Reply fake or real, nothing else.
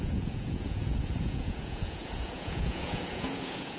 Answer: fake